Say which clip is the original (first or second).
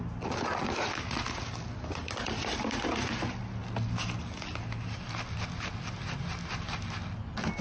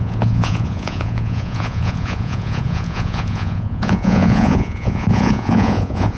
first